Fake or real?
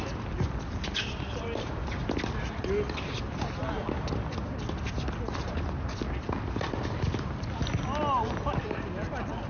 real